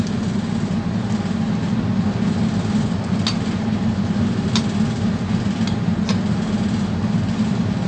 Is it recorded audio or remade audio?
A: recorded